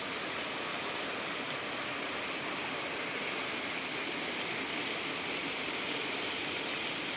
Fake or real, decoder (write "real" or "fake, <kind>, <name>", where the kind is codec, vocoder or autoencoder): real